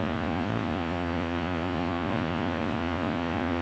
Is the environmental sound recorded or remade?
remade